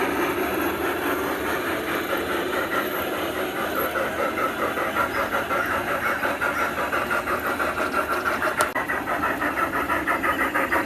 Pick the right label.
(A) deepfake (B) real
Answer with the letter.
B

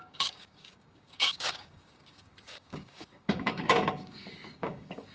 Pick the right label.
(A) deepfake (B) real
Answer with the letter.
A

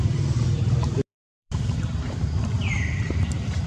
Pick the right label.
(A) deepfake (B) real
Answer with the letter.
A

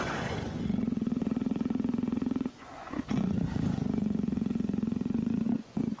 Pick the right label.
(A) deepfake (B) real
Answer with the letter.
A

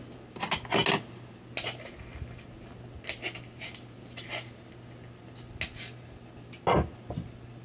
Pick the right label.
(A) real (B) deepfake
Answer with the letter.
A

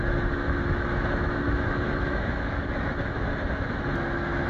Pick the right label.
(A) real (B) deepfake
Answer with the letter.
B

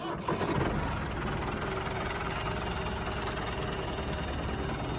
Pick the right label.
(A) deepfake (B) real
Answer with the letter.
B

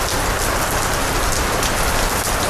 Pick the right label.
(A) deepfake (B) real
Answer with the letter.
B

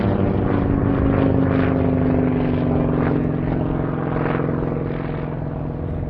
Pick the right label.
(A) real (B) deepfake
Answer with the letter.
A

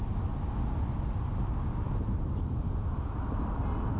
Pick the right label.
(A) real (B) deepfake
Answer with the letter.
A